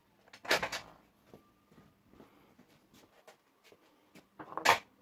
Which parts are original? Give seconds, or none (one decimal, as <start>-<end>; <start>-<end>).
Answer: 0.0-5.0